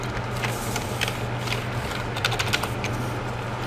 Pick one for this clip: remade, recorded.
recorded